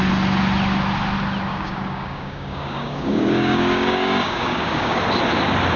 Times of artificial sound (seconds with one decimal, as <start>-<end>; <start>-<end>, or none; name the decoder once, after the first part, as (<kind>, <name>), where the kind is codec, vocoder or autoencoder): 1.5-5.0 (codec, DAC)